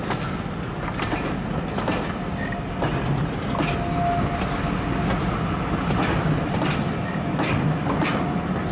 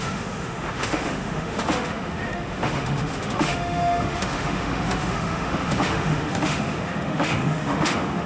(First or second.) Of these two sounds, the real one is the first